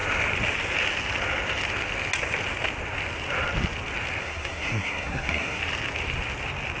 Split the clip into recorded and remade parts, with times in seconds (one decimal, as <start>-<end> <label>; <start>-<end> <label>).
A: 0.0-4.2 recorded; 4.2-5.6 remade; 5.6-6.8 recorded